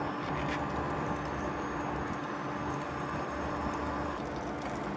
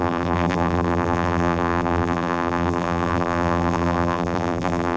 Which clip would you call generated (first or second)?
second